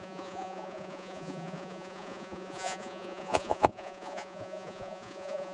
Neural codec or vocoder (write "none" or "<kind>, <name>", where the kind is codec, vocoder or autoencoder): vocoder, Vocos